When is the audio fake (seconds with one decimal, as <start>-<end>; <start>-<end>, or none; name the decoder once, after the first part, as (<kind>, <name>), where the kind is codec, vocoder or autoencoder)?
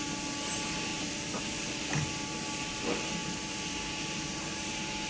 none